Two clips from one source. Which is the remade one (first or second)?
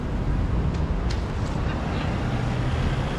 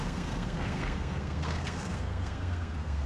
second